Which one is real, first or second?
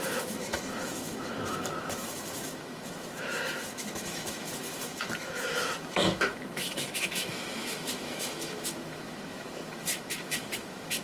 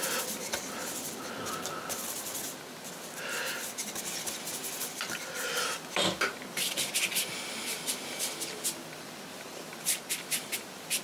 second